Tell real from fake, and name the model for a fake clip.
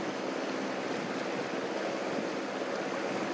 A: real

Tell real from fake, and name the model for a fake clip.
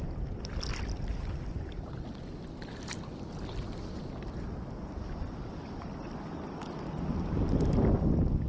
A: real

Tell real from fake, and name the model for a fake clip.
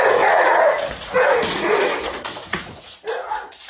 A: fake, vocoder, Vocos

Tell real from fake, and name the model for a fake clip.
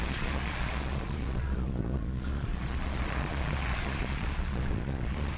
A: fake, vocoder, Vocos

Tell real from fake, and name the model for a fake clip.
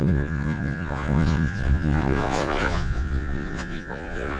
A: fake, vocoder, Vocos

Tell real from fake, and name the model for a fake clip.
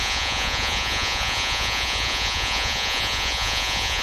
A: fake, vocoder, Vocos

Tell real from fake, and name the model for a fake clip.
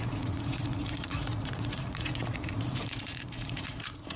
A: fake, vocoder, Vocos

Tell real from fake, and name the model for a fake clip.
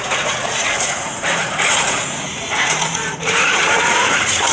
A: fake, vocoder, Vocos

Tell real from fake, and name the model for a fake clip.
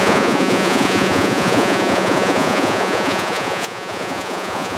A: fake, vocoder, Vocos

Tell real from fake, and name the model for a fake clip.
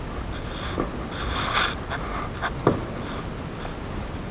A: real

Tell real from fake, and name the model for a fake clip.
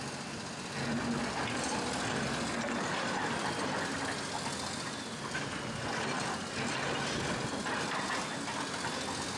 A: real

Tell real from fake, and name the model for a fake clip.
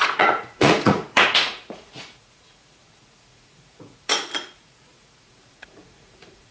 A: fake, vocoder, Vocos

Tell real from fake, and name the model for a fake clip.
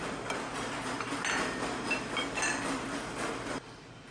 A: real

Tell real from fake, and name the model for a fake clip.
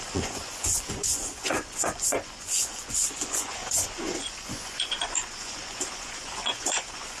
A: fake, vocoder, Vocos